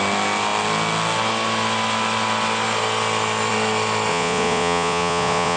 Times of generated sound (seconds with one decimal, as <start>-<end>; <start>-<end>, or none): 4.1-5.6